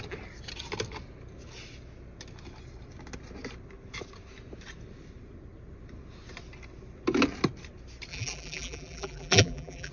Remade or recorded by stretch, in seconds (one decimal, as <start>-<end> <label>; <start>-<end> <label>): 0.0-8.1 recorded; 8.1-9.9 remade